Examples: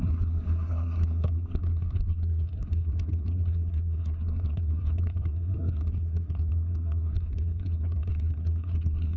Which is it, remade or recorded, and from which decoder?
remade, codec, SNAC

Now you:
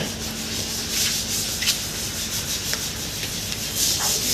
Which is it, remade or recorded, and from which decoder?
recorded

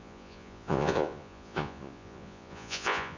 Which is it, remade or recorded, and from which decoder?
remade, vocoder, Vocos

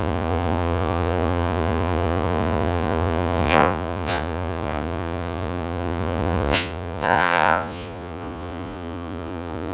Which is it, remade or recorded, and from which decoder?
remade, vocoder, Vocos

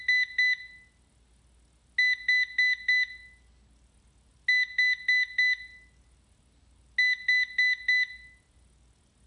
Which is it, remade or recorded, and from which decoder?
recorded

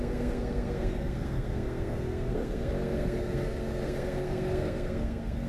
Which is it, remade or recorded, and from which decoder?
remade, codec, SNAC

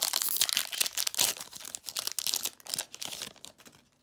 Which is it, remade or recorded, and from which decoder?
recorded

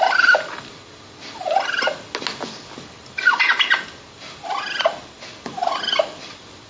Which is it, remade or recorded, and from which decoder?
recorded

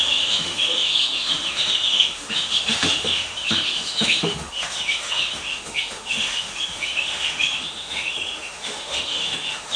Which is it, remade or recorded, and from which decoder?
remade, autoencoder, DAC-VAE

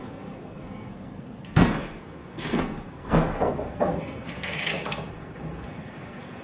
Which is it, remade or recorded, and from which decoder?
remade, codec, SNAC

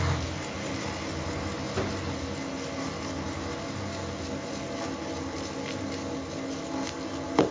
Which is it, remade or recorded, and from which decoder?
recorded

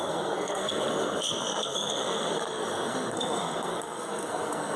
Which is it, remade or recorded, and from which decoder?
remade, codec, SNAC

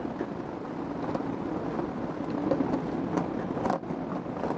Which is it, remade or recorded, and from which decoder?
recorded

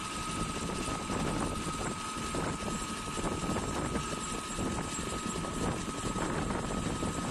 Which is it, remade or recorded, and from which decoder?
recorded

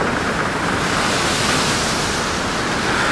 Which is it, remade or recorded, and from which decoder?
recorded